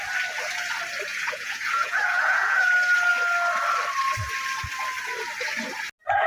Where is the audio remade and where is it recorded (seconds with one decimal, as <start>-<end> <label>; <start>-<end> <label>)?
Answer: 0.0-1.1 recorded; 1.1-2.7 remade; 2.7-6.3 recorded

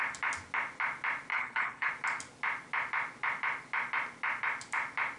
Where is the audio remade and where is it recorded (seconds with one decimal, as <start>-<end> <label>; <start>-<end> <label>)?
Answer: 0.0-1.3 recorded; 1.3-1.9 remade; 1.9-5.2 recorded

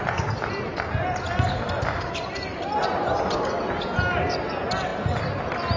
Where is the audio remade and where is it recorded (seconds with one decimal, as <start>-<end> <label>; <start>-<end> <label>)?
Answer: 0.0-5.8 recorded

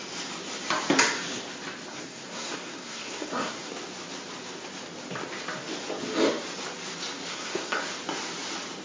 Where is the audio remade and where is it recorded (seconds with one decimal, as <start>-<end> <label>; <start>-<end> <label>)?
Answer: 0.0-1.9 recorded; 1.9-3.7 remade; 3.7-7.3 recorded; 7.3-7.8 remade; 7.8-8.8 recorded

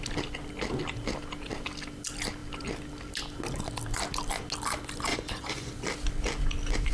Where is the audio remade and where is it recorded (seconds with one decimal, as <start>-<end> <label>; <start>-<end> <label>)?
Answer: 0.0-5.1 recorded; 5.1-5.7 remade; 5.7-6.9 recorded

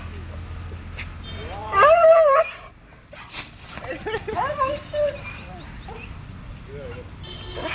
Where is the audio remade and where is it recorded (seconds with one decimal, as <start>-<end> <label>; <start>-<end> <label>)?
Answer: 0.0-1.6 recorded; 1.6-2.4 remade; 2.4-2.9 recorded; 2.9-4.4 remade; 4.4-7.7 recorded

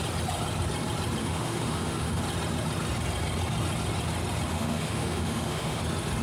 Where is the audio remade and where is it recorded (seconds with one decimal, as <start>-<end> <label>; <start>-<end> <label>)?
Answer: 0.0-1.2 recorded; 1.2-2.2 remade; 2.2-4.5 recorded; 4.5-5.8 remade; 5.8-6.2 recorded